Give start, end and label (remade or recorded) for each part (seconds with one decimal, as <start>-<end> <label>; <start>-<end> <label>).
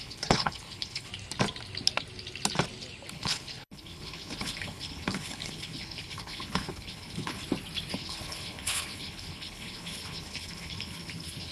0.0-1.1 remade; 1.1-3.1 recorded; 3.1-7.4 remade; 7.4-7.9 recorded; 7.9-11.5 remade